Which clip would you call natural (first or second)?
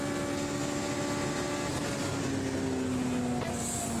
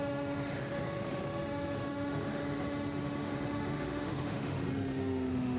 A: first